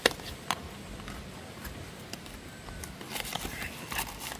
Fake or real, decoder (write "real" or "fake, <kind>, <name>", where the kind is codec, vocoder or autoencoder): real